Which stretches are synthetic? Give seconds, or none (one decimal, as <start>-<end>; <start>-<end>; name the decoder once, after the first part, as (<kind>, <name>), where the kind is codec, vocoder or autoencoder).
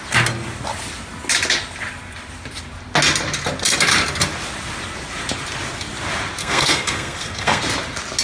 6.4-7.6 (codec, SNAC)